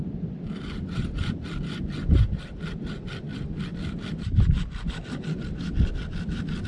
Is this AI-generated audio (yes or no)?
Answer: no